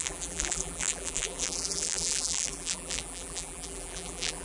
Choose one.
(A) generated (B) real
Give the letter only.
A